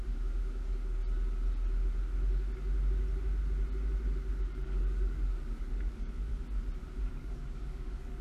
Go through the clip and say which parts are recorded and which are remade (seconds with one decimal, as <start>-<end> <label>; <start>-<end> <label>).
0.0-1.0 remade; 1.0-4.3 recorded; 4.3-6.3 remade; 6.3-7.1 recorded; 7.1-8.2 remade